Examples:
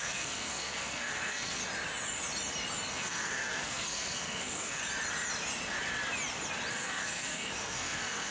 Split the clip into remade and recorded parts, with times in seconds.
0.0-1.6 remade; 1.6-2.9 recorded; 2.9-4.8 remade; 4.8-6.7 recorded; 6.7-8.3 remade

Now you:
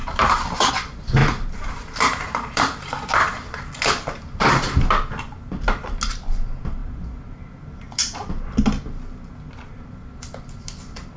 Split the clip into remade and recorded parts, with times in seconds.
0.0-0.7 remade; 0.7-1.2 recorded; 1.2-3.1 remade; 3.1-11.2 recorded

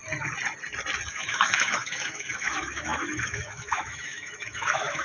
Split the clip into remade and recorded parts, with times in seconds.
0.0-1.1 recorded; 1.1-5.0 remade

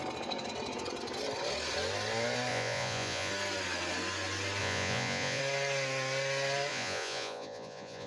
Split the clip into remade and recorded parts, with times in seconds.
0.0-2.5 recorded; 2.5-3.3 remade; 3.3-4.6 recorded; 4.6-5.4 remade; 5.4-6.7 recorded; 6.7-8.1 remade